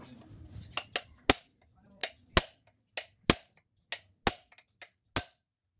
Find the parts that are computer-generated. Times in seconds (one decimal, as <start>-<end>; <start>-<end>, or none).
none

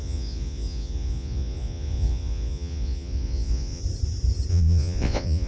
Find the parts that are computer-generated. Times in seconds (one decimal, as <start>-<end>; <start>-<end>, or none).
0.0-3.8; 4.5-5.5

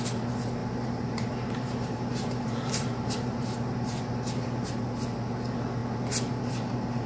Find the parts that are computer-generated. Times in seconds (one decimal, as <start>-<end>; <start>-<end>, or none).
0.6-4.7

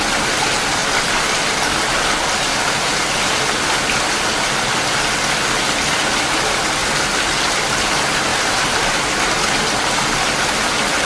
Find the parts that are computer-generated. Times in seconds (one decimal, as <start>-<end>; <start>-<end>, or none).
8.3-9.1

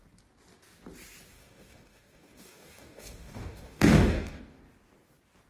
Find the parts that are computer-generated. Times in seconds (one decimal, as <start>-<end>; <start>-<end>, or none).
1.3-4.6